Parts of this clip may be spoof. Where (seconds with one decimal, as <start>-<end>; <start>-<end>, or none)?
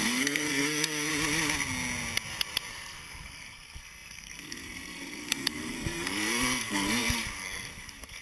0.0-1.1; 2.7-8.2